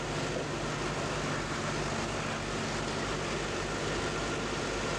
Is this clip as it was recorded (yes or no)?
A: yes